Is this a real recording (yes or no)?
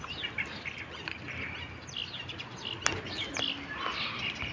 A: yes